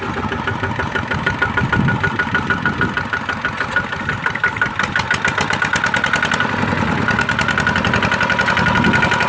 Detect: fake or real real